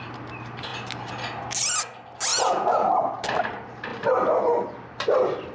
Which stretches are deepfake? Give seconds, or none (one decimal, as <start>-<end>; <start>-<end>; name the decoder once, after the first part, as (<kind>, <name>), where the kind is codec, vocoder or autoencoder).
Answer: 2.3-2.9 (vocoder, Vocos)